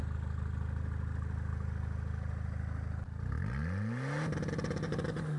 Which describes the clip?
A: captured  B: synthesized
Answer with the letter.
A